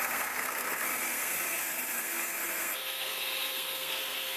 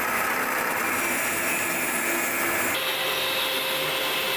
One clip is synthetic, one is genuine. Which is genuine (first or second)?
second